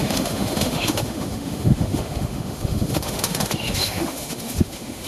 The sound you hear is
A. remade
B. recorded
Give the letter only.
A